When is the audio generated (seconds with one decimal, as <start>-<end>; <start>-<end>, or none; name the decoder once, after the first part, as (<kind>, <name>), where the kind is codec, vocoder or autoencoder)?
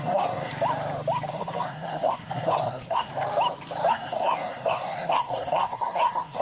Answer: 0.0-0.5 (codec, SNAC); 1.3-3.1; 3.9-6.4